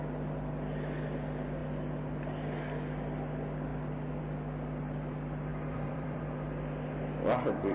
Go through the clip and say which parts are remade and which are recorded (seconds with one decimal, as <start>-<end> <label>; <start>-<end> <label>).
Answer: 0.0-5.5 recorded; 5.5-6.2 remade; 6.2-7.7 recorded